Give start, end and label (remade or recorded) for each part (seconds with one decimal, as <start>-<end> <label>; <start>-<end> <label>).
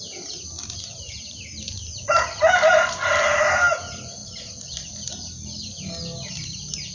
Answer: 0.0-6.9 recorded